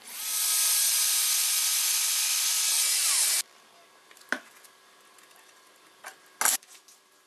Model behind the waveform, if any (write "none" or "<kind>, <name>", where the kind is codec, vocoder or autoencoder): none